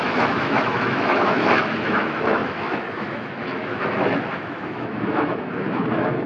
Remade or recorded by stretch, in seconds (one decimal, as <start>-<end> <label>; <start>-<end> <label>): 0.0-6.3 remade